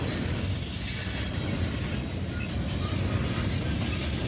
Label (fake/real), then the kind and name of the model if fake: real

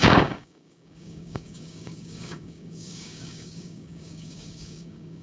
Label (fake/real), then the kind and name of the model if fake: fake, codec, DAC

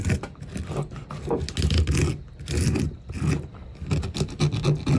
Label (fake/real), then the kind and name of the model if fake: real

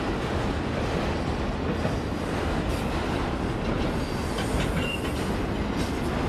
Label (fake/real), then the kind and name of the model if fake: real